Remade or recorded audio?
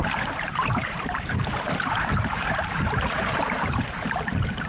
remade